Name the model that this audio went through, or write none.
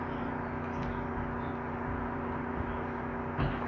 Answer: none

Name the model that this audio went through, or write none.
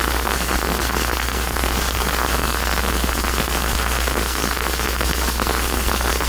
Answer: codec, SNAC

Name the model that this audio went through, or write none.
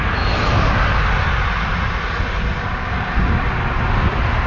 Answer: none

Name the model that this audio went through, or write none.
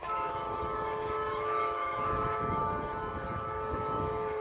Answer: autoencoder, DAC-VAE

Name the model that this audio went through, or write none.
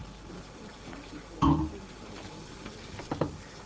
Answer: none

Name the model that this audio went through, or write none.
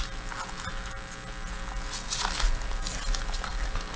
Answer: none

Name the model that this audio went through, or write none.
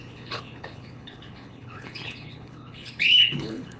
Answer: codec, HILCodec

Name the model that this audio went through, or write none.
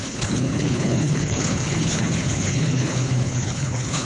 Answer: codec, HILCodec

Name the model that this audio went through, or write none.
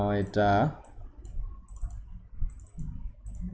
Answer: none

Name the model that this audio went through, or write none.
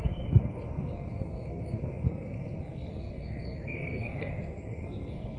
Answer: codec, SNAC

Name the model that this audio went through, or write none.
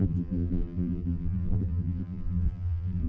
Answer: vocoder, BigVGAN v2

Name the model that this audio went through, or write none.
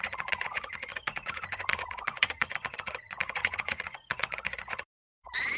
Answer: vocoder, Vocos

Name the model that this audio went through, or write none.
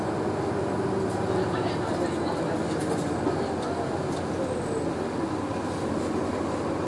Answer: none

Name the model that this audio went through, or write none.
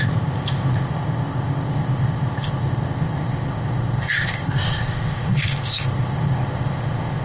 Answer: codec, ZipCodec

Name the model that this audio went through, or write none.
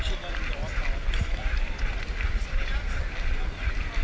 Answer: vocoder, BigVGAN v2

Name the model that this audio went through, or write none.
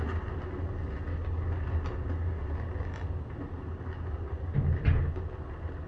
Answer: none